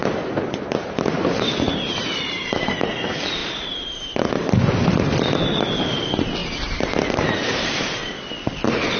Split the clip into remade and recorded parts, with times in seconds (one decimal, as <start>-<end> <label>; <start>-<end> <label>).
0.0-2.9 remade; 2.9-3.4 recorded; 3.4-4.3 remade; 4.3-6.4 recorded; 6.4-8.2 remade; 8.2-9.0 recorded